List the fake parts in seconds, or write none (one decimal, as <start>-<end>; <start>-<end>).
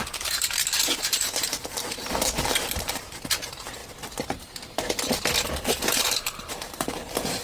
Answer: 0.0-3.8; 5.8-7.4